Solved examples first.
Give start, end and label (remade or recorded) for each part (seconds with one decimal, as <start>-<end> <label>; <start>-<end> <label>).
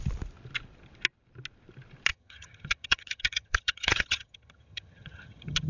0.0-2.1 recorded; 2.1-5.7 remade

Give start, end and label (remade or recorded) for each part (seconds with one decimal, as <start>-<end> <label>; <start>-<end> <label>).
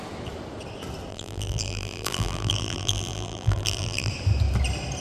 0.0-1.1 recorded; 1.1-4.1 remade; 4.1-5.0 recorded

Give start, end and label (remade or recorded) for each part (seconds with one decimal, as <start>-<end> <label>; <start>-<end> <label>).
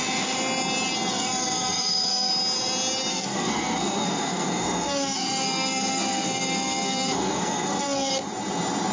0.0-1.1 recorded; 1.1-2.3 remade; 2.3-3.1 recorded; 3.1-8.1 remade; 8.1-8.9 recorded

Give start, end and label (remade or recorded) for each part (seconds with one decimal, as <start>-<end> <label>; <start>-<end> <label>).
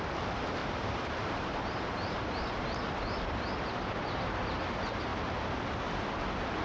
0.0-0.6 recorded; 0.6-4.6 remade; 4.6-6.6 recorded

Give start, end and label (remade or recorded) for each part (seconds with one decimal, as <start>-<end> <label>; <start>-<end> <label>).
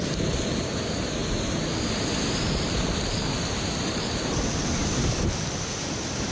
0.0-1.2 remade; 1.2-4.0 recorded; 4.0-6.3 remade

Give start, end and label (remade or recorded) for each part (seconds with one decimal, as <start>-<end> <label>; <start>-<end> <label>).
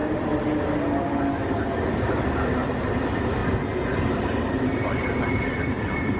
0.0-1.9 recorded; 1.9-3.4 remade; 3.4-4.1 recorded; 4.1-6.2 remade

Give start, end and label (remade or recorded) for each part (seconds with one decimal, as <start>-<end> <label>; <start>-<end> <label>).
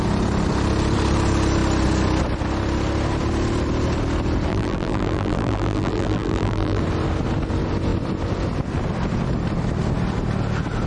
0.0-4.5 recorded; 4.5-6.8 remade; 6.8-10.9 recorded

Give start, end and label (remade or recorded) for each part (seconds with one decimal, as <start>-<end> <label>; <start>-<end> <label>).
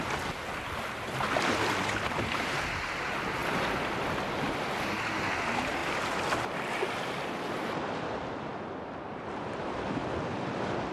0.0-3.4 recorded; 3.4-4.4 remade; 4.4-10.3 recorded; 10.3-10.9 remade